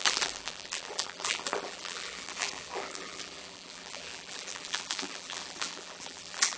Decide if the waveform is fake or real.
fake